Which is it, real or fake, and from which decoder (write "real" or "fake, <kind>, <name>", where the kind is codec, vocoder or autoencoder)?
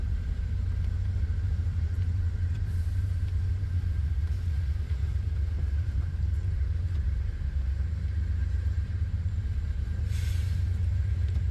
fake, vocoder, BigVGAN v2